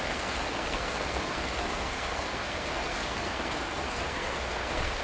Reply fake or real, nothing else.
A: fake